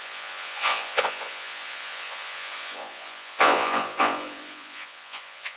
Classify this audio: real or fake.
fake